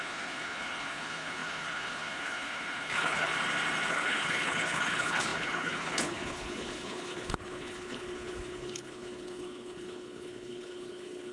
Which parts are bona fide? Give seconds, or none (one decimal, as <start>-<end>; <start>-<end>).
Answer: 3.3-3.9